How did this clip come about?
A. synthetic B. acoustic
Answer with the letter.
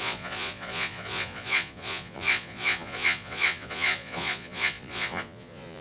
A